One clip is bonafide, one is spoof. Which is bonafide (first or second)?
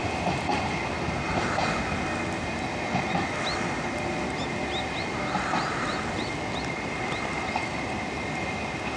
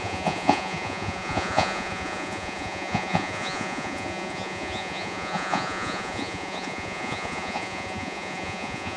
first